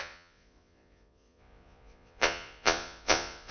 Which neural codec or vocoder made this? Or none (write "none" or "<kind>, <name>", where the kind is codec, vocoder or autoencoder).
vocoder, Vocos